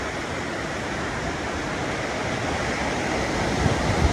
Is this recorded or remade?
recorded